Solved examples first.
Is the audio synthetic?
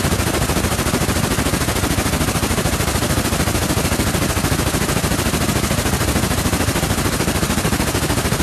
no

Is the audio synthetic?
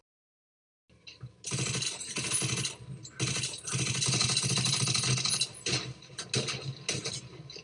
no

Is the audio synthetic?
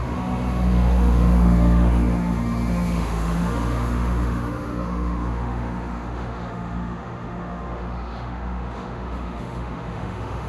yes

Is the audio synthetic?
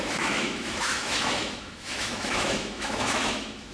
yes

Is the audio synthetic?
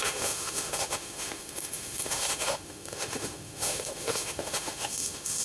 yes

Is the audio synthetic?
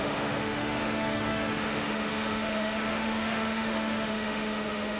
yes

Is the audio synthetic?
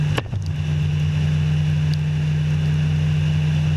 no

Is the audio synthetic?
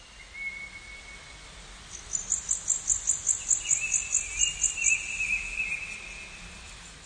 no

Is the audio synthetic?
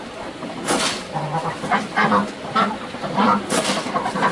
no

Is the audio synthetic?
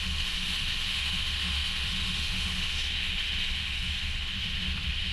yes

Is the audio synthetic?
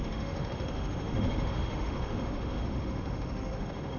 yes